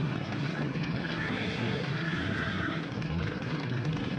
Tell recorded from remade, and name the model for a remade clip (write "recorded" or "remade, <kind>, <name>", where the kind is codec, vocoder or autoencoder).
remade, codec, SNAC